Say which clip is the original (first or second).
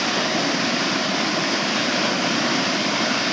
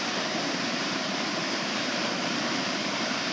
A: first